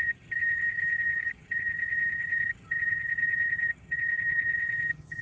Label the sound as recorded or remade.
remade